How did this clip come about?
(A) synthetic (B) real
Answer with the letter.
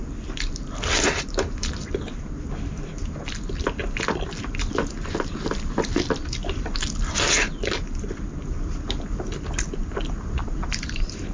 B